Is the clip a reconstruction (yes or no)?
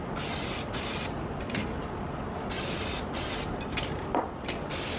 no